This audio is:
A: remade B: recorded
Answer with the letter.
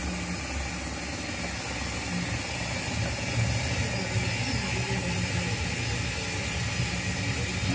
B